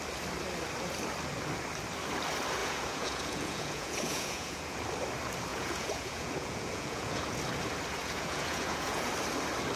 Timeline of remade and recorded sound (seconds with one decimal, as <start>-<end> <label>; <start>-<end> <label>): 0.0-2.6 recorded; 2.6-4.8 remade; 4.8-5.5 recorded; 5.5-7.4 remade; 7.4-8.0 recorded; 8.0-9.1 remade; 9.1-9.8 recorded